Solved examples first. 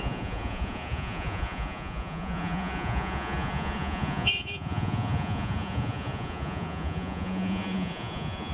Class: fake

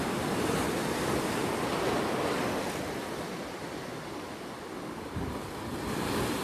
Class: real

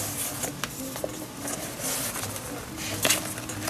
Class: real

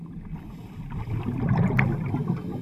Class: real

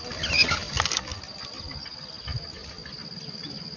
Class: real